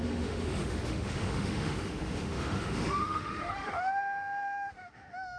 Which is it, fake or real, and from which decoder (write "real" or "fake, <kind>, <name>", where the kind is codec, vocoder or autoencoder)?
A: fake, autoencoder, DAC-VAE